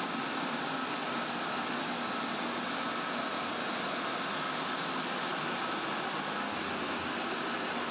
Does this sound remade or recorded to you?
recorded